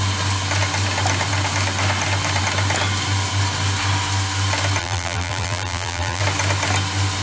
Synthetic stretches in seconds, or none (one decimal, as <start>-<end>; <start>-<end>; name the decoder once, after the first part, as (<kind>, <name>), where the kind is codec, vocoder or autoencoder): 4.8-6.2 (vocoder, BigVGAN v2)